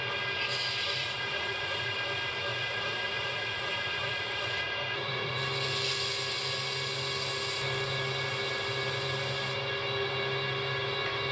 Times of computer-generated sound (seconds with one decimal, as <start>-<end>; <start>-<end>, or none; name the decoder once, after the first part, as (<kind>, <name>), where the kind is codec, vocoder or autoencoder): 1.0-1.9 (vocoder, Vocos); 2.5-5.4